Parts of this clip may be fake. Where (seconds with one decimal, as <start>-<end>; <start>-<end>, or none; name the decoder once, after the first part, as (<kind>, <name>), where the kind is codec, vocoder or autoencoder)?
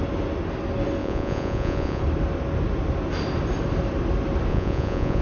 1.0-2.0 (vocoder, Vocos); 4.5-5.2